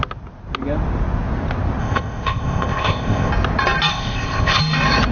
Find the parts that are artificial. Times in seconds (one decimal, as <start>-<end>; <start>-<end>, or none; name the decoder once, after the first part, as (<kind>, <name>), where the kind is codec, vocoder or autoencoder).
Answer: 1.8-3.3 (codec, ZipCodec); 3.9-4.6